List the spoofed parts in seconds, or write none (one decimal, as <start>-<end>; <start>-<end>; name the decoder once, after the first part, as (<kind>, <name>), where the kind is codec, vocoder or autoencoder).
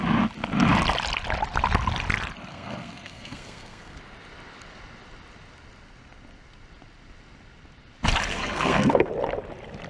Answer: 2.5-4.0 (codec, SNAC); 8.3-9.1